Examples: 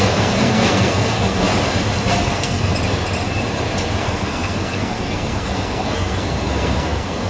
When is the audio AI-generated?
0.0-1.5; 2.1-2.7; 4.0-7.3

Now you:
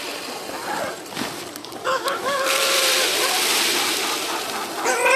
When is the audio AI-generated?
1.6-2.5

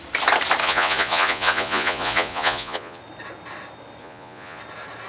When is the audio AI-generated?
0.6-3.0; 4.0-4.6